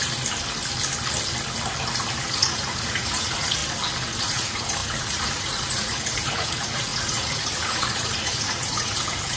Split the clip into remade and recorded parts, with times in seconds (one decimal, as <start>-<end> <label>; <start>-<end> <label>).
0.0-2.2 recorded; 2.2-3.6 remade; 3.6-4.2 recorded; 4.2-9.4 remade

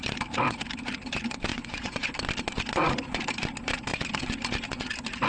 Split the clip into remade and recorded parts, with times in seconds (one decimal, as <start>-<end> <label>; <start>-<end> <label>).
0.0-1.5 recorded; 1.5-2.1 remade; 2.1-5.3 recorded

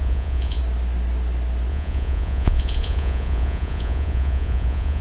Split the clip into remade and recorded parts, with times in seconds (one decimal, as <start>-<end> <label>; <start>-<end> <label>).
0.0-0.6 remade; 0.6-1.7 recorded; 1.7-5.0 remade

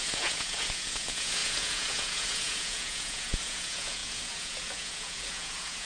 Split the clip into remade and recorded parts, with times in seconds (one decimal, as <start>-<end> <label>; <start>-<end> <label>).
0.0-5.9 remade

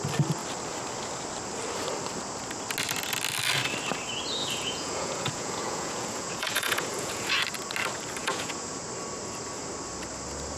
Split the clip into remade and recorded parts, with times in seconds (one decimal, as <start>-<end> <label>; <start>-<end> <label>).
0.0-4.4 recorded; 4.4-7.3 remade; 7.3-8.2 recorded; 8.2-8.8 remade; 8.8-10.6 recorded

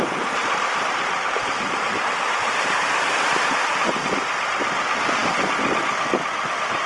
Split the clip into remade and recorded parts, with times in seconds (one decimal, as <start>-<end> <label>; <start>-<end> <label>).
0.0-6.9 recorded